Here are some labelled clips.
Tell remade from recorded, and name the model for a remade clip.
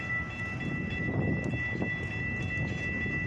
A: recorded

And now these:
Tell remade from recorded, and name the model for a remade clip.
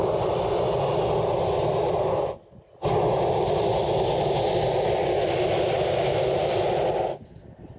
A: recorded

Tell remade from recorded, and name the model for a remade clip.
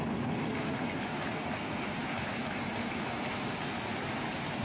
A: recorded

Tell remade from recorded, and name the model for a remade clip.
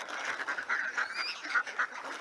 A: recorded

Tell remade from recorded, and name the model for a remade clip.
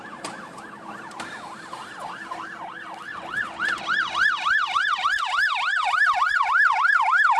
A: recorded